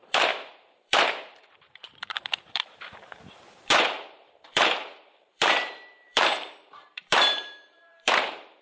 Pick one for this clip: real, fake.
fake